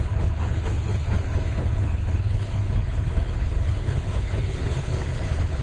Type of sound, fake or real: fake